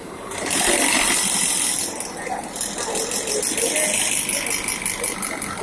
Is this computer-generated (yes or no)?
no